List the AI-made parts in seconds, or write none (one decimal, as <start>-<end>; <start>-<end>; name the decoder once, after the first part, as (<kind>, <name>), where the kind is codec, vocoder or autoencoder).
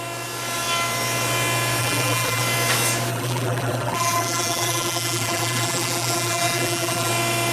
1.8-2.4 (vocoder, BigVGAN v2); 3.1-7.1